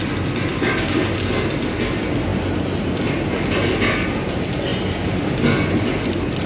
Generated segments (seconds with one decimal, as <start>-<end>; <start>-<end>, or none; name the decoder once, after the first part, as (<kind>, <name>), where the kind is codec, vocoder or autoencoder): 0.5-1.1 (codec, DAC)